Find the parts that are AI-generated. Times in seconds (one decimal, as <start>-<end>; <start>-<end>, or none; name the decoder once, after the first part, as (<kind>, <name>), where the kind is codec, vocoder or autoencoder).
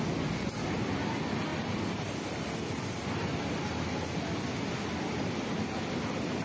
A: 1.5-3.6 (vocoder, BigVGAN v2)